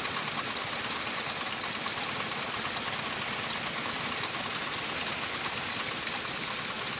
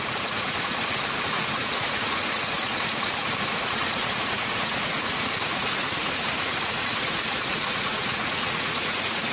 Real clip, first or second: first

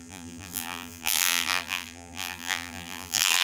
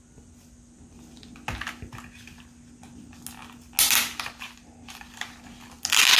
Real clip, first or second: second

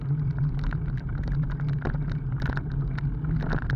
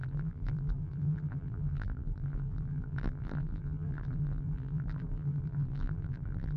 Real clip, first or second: first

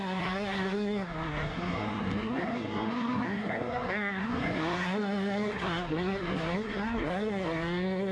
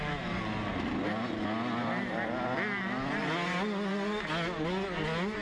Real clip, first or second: second